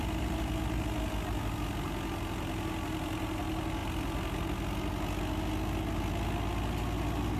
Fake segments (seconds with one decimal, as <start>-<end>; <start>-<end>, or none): none